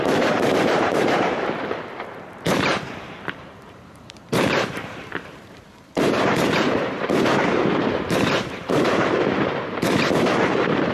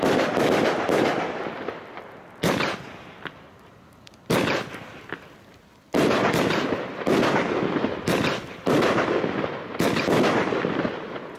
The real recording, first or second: second